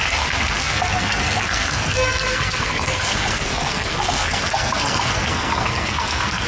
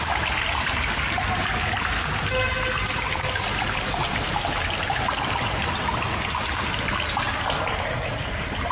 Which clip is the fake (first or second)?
first